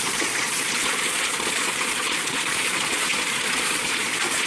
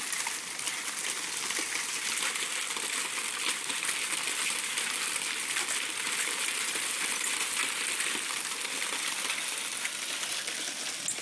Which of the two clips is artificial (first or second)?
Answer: first